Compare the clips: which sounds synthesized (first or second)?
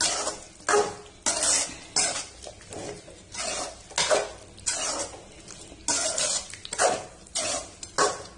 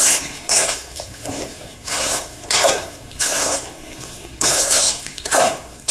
second